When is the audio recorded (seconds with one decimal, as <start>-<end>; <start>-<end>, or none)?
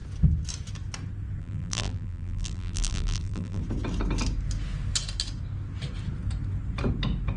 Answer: 0.0-1.4; 3.6-7.4